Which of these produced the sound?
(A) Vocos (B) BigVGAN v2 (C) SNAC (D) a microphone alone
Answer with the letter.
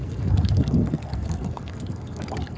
C